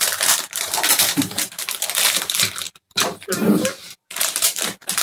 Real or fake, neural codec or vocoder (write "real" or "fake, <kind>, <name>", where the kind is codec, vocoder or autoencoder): fake, vocoder, BigVGAN v2